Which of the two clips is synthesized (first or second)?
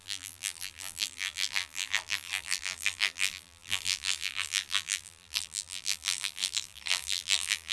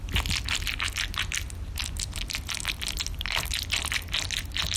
first